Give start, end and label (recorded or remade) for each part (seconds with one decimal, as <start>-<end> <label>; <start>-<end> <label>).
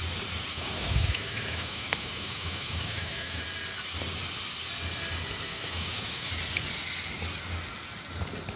0.0-0.5 recorded; 0.5-3.4 remade; 3.4-5.5 recorded; 5.5-6.3 remade; 6.3-8.6 recorded